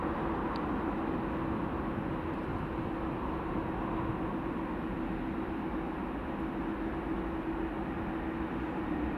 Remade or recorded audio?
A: recorded